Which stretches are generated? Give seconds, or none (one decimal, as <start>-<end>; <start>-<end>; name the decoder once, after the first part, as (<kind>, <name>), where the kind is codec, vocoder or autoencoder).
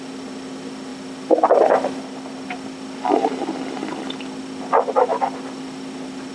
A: 5.1-6.3 (vocoder, BigVGAN v2)